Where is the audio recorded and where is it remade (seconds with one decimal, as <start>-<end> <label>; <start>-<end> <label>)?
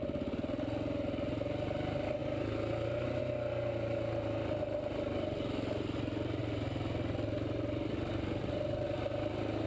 0.0-9.7 recorded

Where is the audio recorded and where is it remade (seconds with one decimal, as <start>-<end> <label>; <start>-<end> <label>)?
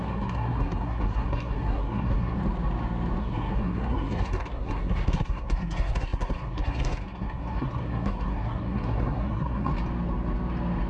0.0-2.4 remade; 2.4-3.2 recorded; 3.2-9.7 remade; 9.7-10.9 recorded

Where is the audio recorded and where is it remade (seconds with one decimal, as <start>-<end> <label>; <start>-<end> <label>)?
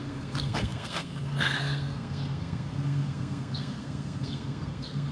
0.0-5.1 remade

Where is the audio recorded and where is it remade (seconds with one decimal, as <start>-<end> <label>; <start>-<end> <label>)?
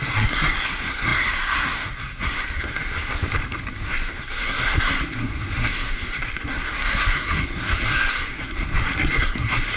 0.0-3.2 remade; 3.2-3.7 recorded; 3.7-9.8 remade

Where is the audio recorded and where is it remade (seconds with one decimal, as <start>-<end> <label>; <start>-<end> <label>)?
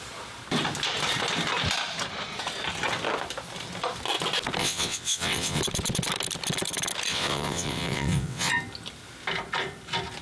0.0-4.6 recorded; 4.6-5.6 remade; 5.6-7.1 recorded; 7.1-8.5 remade; 8.5-10.2 recorded